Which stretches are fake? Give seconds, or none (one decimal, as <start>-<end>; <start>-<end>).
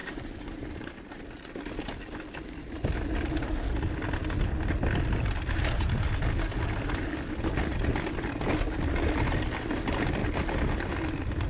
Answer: 0.0-1.2